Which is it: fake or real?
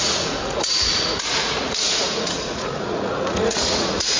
fake